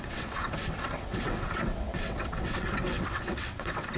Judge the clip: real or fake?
fake